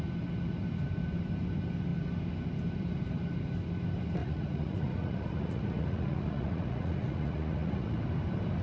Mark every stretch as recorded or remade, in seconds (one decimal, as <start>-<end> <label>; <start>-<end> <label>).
0.0-4.2 recorded; 4.2-8.0 remade; 8.0-8.6 recorded